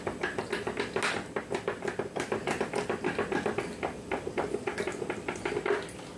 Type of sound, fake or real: real